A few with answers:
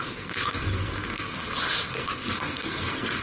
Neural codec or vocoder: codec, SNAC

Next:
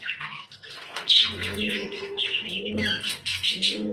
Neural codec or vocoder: codec, SNAC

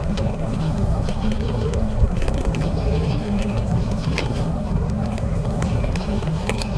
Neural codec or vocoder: codec, SNAC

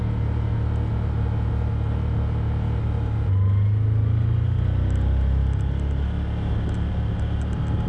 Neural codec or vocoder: none